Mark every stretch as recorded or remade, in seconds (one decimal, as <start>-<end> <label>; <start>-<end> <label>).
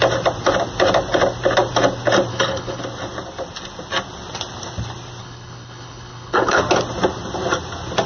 0.0-2.3 recorded; 2.3-2.8 remade; 2.8-5.2 recorded; 5.2-6.6 remade; 6.6-8.1 recorded